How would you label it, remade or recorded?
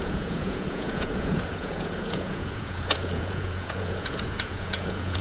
remade